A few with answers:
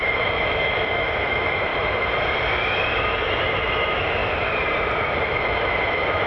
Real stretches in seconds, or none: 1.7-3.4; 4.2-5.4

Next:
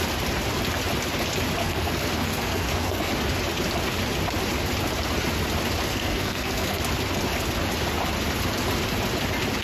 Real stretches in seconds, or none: 0.0-1.6; 3.1-5.9; 6.8-9.6

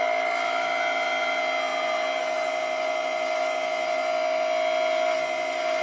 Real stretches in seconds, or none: 0.0-5.8